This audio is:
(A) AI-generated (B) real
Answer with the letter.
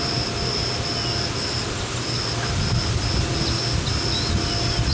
B